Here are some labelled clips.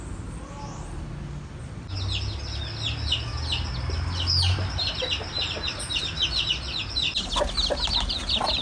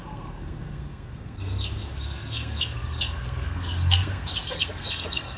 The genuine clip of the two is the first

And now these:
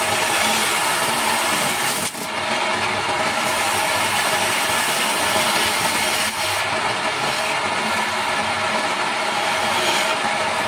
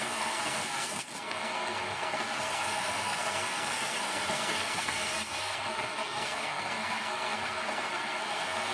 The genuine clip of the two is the first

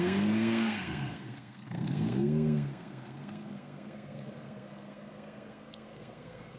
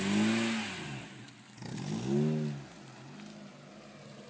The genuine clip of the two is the second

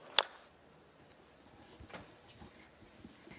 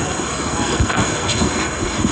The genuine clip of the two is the first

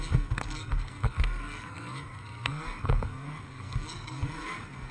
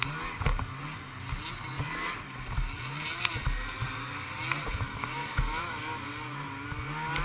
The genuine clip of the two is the second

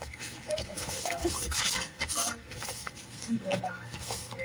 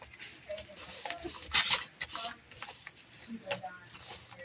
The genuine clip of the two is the second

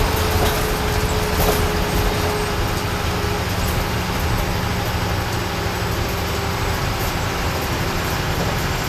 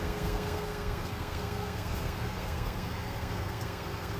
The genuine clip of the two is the first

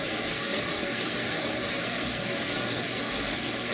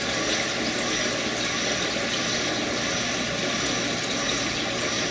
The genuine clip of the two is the second